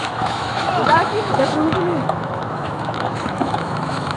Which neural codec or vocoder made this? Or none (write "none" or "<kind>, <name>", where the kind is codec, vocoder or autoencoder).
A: autoencoder, DAC-VAE